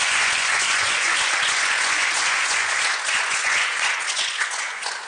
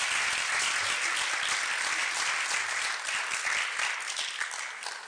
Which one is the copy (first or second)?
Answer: first